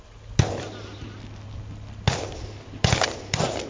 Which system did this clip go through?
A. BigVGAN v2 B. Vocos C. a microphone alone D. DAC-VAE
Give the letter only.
C